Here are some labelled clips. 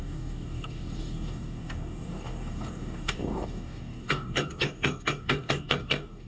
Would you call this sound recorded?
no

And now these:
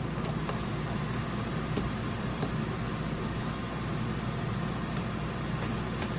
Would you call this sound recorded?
yes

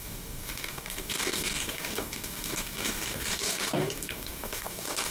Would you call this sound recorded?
no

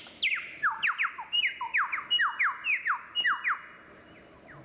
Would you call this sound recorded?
yes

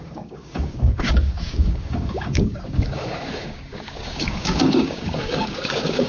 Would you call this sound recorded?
no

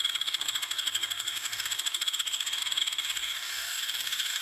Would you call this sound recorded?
no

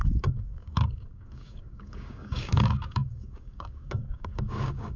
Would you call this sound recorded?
no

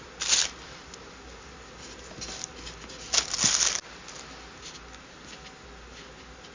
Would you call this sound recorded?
yes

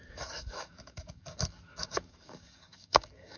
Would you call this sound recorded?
no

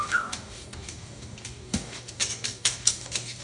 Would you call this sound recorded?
no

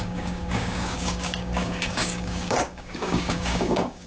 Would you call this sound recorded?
no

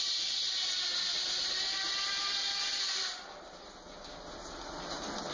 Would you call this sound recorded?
yes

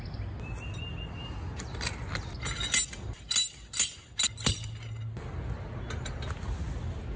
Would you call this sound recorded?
yes